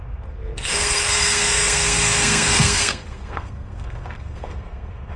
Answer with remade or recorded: remade